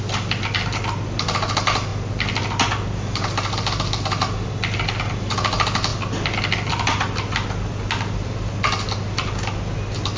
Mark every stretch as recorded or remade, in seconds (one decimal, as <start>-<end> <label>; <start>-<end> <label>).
0.0-10.2 recorded